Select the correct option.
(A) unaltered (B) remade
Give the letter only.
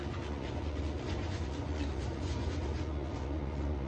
B